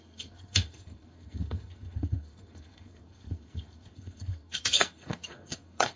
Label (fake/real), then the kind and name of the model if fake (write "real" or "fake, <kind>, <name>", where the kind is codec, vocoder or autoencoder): fake, codec, SNAC